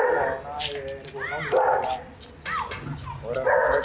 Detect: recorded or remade recorded